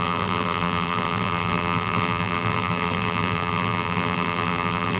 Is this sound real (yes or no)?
no